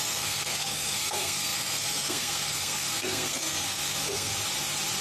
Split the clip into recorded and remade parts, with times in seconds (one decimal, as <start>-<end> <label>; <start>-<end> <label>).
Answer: 0.0-4.3 remade; 4.3-5.0 recorded